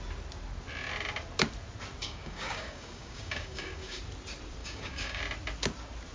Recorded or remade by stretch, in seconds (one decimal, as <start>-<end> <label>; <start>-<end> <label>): 0.0-2.0 recorded; 2.0-4.0 remade; 4.0-4.6 recorded; 4.6-5.2 remade; 5.2-6.1 recorded